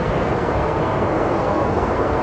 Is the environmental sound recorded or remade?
remade